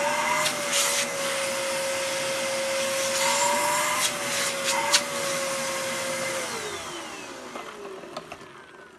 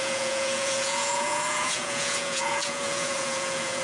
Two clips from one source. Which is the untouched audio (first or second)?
first